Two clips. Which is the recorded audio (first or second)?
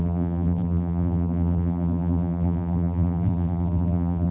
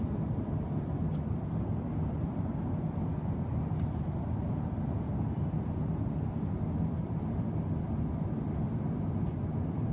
second